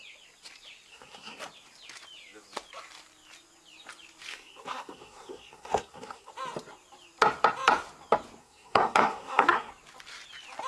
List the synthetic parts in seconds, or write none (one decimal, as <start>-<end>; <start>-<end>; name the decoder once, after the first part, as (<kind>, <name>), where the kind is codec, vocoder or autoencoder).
0.9-1.4 (codec, SNAC); 4.3-6.3; 8.4-9.7